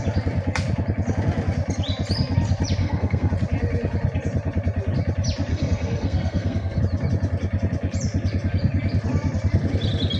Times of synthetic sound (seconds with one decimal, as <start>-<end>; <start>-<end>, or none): 2.8-3.3; 5.5-6.8